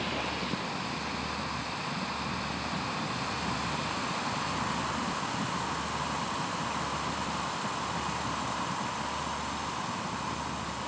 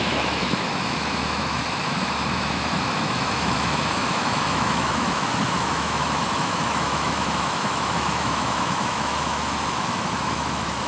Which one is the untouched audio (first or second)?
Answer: first